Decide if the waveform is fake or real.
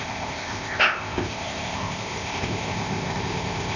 fake